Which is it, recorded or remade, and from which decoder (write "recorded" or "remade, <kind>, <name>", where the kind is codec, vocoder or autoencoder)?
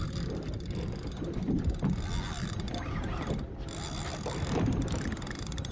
recorded